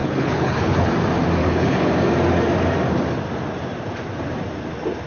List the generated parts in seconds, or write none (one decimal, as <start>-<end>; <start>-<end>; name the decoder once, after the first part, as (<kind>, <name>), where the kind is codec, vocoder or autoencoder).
0.0-0.9 (codec, HILCodec); 1.4-1.9

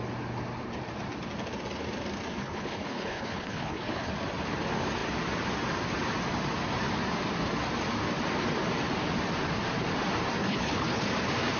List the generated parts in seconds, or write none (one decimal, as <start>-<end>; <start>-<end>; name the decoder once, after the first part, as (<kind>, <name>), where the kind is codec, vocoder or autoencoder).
2.4-4.1 (codec, HILCodec); 10.4-11.1

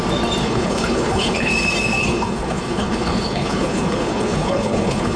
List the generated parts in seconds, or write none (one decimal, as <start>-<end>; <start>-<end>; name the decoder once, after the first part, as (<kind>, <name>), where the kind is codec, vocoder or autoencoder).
0.4-1.5 (codec, HILCodec); 2.0-5.2

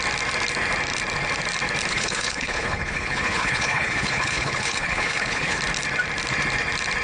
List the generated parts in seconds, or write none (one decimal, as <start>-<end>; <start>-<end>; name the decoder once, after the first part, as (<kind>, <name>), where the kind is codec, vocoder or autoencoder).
1.9-5.6 (codec, HILCodec)

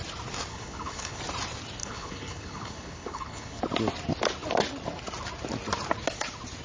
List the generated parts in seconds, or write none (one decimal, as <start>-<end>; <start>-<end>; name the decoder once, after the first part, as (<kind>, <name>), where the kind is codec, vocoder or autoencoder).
0.5-1.2 (codec, HILCodec); 1.8-3.6